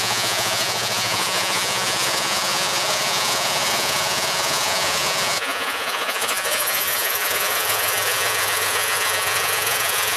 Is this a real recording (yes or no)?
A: no